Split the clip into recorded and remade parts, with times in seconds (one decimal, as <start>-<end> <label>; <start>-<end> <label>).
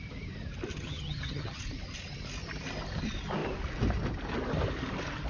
0.0-0.7 recorded; 0.7-1.6 remade; 1.6-5.3 recorded